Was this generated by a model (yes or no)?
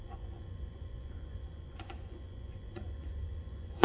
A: yes